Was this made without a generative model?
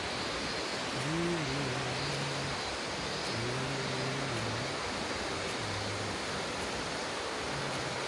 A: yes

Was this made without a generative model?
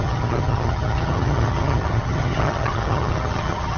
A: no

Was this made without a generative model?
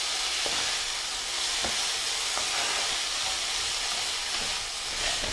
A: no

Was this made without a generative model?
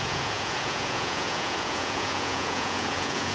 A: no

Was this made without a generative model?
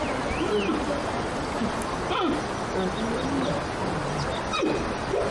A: yes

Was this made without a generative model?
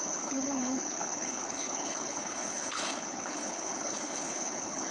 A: no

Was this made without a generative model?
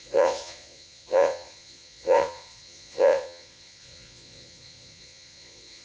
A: no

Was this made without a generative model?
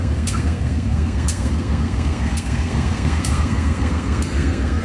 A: no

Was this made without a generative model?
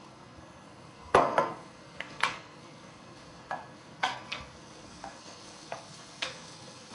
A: no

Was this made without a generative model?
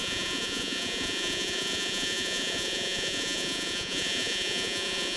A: no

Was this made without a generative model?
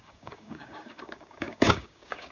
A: no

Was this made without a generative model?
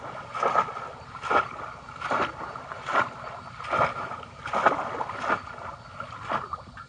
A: yes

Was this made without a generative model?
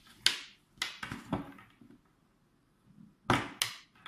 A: yes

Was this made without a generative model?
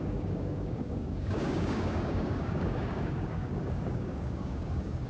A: no